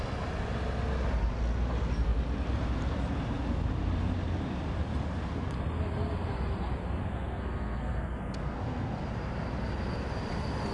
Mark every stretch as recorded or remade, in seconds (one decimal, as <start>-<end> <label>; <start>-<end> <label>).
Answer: 0.0-7.0 recorded; 7.0-9.0 remade; 9.0-10.7 recorded